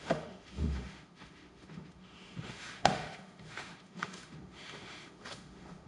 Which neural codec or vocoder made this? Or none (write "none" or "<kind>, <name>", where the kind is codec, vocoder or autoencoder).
autoencoder, DAC-VAE